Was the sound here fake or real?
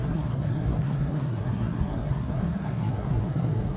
fake